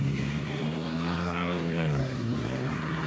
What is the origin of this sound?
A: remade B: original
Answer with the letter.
A